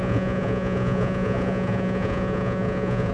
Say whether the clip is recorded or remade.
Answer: remade